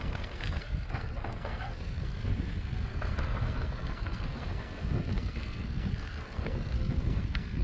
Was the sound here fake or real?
fake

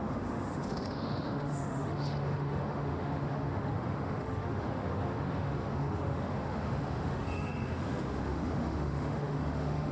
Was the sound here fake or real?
fake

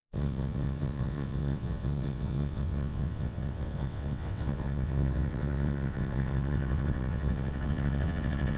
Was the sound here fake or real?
fake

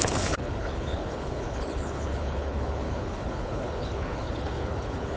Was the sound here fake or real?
fake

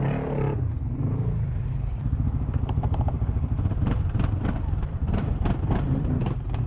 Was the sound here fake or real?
fake